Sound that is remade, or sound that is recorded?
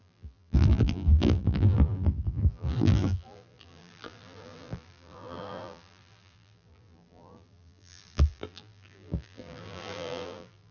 remade